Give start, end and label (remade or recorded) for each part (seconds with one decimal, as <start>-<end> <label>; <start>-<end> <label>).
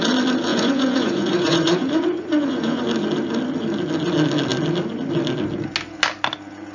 0.0-0.5 recorded; 0.5-2.8 remade; 2.8-6.7 recorded